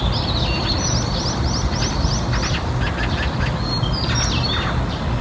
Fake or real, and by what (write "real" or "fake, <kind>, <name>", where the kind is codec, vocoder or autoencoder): real